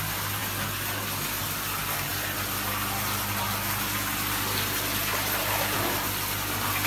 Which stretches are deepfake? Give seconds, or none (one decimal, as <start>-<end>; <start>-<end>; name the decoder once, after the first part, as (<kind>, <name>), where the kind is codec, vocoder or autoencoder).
none